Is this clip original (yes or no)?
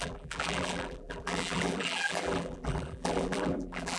no